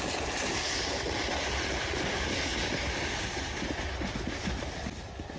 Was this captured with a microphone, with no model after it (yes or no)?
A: yes